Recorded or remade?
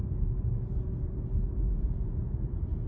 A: remade